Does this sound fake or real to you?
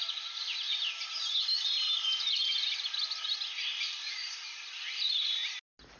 real